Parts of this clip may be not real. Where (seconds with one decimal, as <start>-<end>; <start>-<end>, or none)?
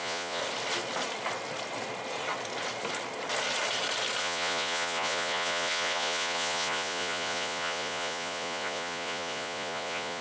0.0-0.4; 4.2-10.2